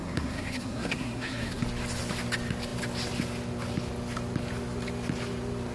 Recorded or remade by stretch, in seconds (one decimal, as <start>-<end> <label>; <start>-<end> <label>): 0.0-1.6 remade; 1.6-5.7 recorded